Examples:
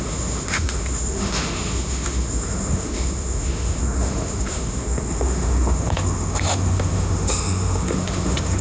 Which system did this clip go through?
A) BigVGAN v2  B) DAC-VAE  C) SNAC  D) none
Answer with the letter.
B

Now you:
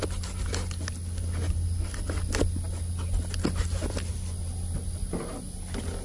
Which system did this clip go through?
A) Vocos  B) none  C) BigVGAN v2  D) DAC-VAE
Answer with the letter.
B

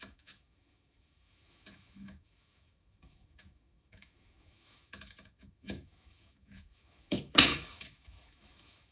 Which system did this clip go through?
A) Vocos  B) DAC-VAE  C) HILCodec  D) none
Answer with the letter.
B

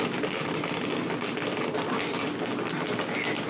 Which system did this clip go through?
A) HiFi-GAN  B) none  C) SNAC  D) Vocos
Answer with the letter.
B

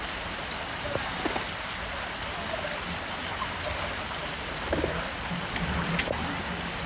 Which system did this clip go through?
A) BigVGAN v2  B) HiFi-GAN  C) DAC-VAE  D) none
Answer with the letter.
D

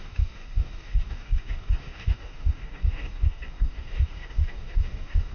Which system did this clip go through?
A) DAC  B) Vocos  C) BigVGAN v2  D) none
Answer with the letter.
A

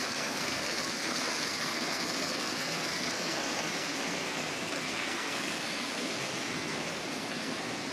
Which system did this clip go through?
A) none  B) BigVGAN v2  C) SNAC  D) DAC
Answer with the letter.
C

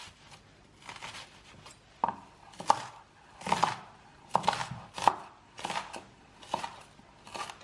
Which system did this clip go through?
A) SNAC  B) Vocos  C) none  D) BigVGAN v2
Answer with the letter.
C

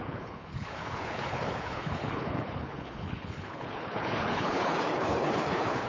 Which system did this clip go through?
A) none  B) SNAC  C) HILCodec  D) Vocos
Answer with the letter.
C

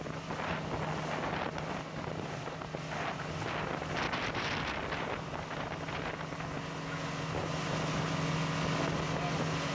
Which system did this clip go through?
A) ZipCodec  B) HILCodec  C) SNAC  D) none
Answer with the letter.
D